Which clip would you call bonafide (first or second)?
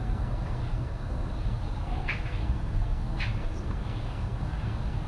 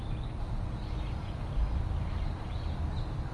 second